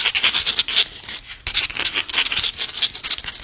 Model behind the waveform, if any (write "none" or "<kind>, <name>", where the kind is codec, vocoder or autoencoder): none